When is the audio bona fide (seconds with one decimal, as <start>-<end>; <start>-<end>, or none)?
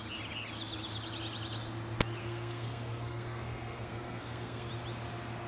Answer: 0.0-2.2; 4.7-5.5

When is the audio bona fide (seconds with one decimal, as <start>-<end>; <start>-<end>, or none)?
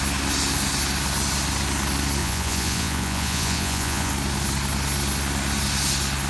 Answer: 0.0-2.2; 4.1-6.3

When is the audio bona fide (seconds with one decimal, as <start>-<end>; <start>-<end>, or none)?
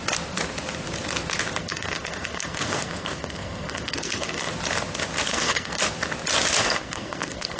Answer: 0.0-1.6; 4.5-5.3; 5.8-6.6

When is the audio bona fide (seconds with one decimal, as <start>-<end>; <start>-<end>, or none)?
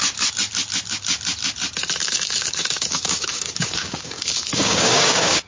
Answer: 0.0-2.0